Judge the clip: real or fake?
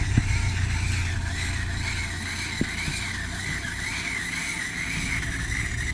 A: real